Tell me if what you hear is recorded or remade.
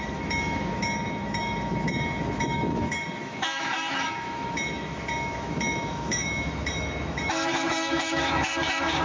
remade